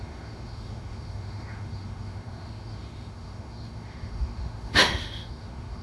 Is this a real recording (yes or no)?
no